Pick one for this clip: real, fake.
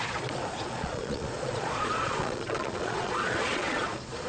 fake